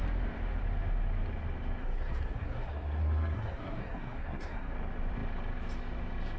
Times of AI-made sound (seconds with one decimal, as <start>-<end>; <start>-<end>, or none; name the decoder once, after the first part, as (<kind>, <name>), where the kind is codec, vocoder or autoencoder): 1.8-4.7 (codec, SNAC)